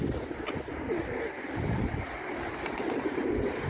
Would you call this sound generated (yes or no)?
no